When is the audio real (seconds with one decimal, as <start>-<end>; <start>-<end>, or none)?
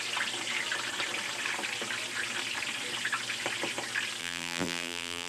0.0-4.2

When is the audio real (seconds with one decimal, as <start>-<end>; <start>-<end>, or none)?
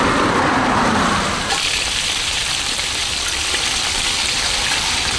3.0-3.8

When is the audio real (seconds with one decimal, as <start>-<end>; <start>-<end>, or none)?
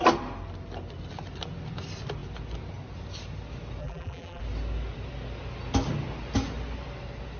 0.0-3.8; 4.4-7.4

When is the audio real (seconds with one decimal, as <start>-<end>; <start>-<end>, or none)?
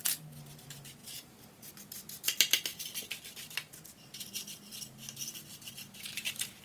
0.0-1.0; 1.7-6.6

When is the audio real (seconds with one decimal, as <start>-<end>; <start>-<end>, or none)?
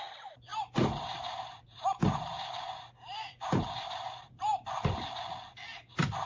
0.0-0.5; 4.3-6.3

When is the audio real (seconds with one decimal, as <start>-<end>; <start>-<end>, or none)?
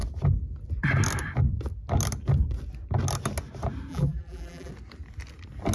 0.0-3.9; 4.7-5.7